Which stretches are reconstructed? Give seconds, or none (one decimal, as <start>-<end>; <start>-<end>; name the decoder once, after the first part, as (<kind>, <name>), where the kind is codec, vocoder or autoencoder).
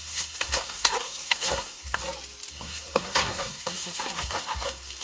0.0-2.0 (codec, SNAC); 2.5-5.0